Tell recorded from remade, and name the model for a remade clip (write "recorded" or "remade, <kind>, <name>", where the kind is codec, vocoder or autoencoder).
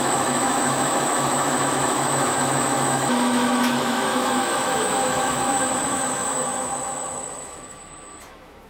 remade, autoencoder, DAC-VAE